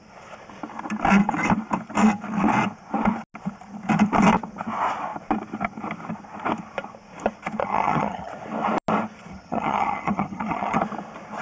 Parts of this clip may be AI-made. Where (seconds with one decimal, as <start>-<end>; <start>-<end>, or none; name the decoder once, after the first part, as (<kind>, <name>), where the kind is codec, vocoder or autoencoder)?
7.6-8.3 (vocoder, HiFi-GAN); 9.3-10.8